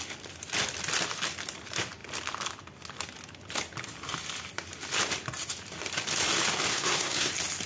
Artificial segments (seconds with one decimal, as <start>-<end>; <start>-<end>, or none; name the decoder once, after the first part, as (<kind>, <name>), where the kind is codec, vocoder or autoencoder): 6.7-7.3 (codec, SNAC)